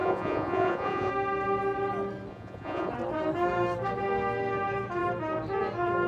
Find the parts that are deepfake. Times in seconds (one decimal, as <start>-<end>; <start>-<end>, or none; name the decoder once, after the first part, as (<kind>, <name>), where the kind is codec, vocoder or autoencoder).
0.0-1.1 (vocoder, Vocos); 2.3-2.9